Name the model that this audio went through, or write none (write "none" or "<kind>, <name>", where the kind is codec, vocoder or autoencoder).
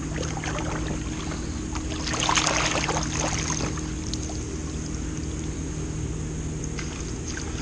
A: none